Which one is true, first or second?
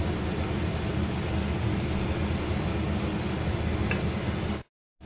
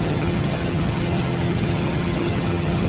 first